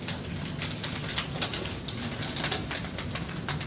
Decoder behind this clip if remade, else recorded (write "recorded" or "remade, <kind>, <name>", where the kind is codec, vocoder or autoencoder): recorded